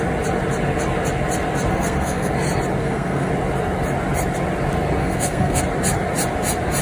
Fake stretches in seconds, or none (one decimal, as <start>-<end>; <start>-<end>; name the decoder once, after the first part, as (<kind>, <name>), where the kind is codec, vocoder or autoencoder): 1.7-2.3 (codec, SNAC); 2.8-3.3; 5.0-5.6